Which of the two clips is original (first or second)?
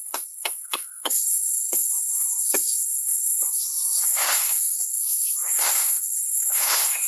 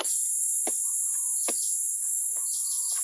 second